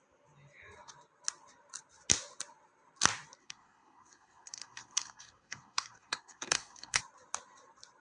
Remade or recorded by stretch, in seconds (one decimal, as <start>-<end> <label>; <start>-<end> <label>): 0.0-3.4 recorded; 3.4-7.0 remade; 7.0-8.0 recorded